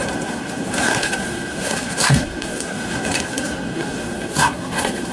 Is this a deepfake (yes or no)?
yes